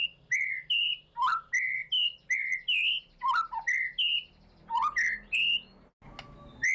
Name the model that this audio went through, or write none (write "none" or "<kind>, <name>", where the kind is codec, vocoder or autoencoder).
none